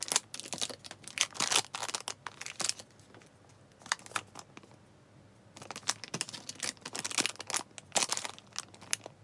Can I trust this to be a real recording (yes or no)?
yes